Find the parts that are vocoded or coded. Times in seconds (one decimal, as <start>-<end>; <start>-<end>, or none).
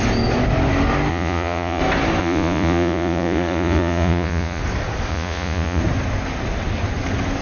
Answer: 1.1-1.8; 2.2-4.6; 5.1-5.8